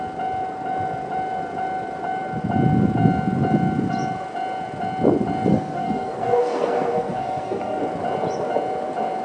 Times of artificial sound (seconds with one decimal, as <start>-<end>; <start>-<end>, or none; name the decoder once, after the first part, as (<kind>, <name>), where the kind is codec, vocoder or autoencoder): 5.5-7.8 (codec, SNAC)